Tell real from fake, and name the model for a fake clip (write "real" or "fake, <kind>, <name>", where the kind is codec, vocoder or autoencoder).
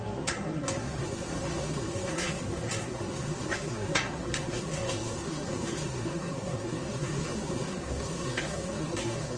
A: fake, codec, SNAC